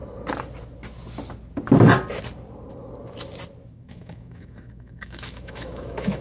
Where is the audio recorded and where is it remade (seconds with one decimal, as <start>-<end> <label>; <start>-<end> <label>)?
0.0-3.7 recorded; 3.7-6.2 remade